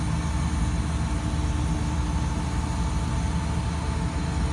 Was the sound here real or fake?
real